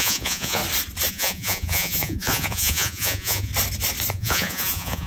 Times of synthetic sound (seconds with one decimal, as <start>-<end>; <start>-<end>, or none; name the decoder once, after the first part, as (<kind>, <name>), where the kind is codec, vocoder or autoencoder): 0.0-0.6 (vocoder, Vocos); 1.1-3.5; 4.1-5.1